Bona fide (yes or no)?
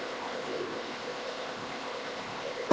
no